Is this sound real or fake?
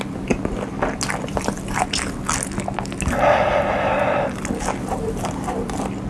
real